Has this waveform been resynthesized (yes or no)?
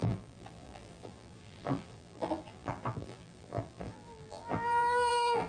yes